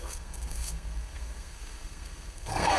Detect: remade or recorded remade